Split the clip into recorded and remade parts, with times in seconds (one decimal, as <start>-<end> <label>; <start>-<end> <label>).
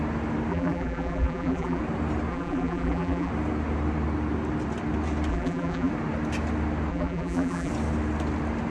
0.0-0.5 recorded; 0.5-1.8 remade; 1.8-2.3 recorded; 2.3-3.3 remade; 3.3-5.3 recorded; 5.3-5.9 remade; 5.9-6.9 recorded; 6.9-7.7 remade; 7.7-8.7 recorded